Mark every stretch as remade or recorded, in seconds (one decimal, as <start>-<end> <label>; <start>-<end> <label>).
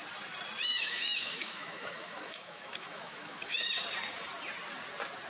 0.0-0.6 recorded; 0.6-3.8 remade; 3.8-5.3 recorded